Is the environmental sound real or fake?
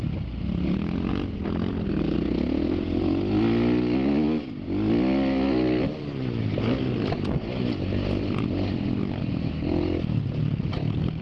real